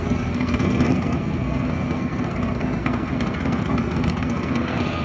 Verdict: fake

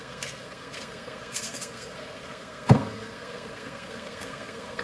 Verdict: fake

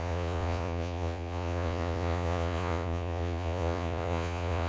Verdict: fake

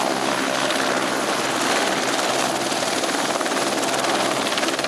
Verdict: real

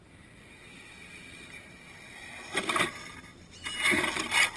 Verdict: real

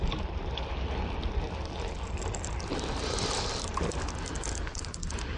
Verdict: fake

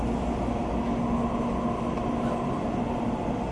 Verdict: real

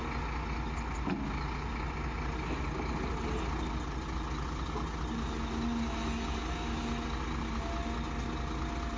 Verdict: real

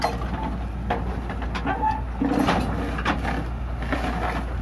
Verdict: real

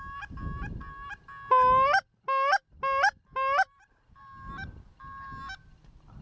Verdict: real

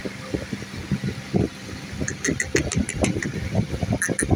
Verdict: real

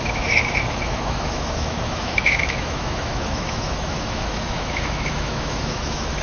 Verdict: fake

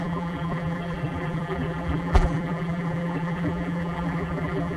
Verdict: fake